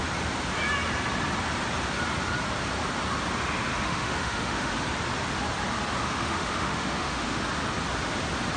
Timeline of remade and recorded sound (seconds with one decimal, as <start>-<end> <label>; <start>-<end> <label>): 0.0-3.7 recorded; 3.7-4.7 remade; 4.7-6.0 recorded; 6.0-7.4 remade; 7.4-8.6 recorded